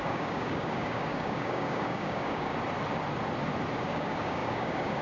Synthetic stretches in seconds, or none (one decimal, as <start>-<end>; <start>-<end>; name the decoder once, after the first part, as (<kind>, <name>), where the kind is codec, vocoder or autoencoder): 0.0-2.5 (codec, DAC); 3.8-5.0